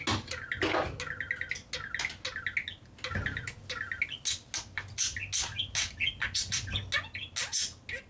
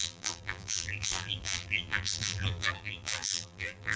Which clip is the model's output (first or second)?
second